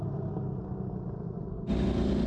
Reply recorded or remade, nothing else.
recorded